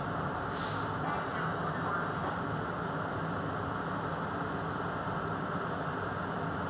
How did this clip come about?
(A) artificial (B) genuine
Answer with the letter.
B